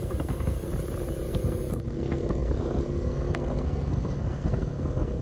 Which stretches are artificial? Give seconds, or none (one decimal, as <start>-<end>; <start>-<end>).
0.0-0.7; 1.3-5.2